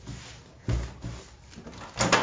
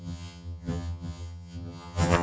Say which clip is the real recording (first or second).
first